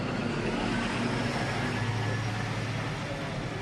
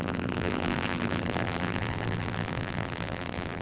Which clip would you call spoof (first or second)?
second